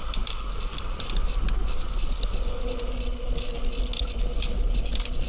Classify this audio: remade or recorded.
recorded